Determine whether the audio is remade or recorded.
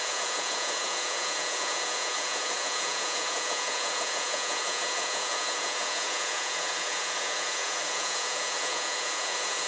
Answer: remade